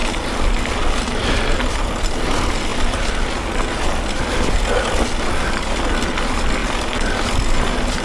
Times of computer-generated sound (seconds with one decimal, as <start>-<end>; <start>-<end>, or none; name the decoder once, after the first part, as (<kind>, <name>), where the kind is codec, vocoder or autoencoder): 0.0-0.7 (vocoder, BigVGAN v2); 6.6-8.0